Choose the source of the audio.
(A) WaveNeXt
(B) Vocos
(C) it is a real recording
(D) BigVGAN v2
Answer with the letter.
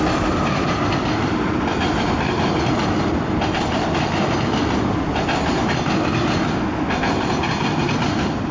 C